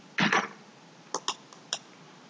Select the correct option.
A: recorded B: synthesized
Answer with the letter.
A